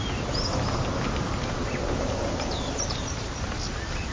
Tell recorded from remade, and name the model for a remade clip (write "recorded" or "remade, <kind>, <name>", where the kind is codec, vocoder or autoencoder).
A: recorded